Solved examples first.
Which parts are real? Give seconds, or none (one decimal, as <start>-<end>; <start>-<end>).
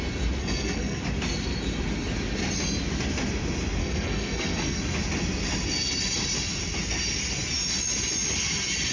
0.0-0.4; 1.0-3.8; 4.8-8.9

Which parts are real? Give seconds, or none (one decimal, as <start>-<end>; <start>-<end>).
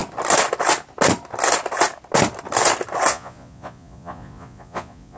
0.0-3.1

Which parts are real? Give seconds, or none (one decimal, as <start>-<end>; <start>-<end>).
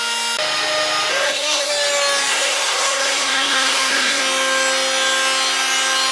0.0-1.1; 1.7-2.3; 4.2-6.1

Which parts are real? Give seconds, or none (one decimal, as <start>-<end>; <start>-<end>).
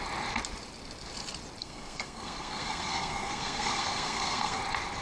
0.0-1.6; 4.6-5.0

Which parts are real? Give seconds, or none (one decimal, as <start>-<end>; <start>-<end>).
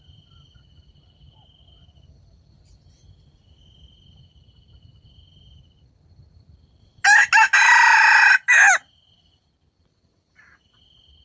0.0-11.2